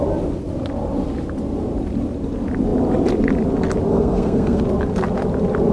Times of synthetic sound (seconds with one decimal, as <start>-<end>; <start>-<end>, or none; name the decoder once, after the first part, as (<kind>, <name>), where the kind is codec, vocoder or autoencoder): 3.9-4.6 (codec, SNAC)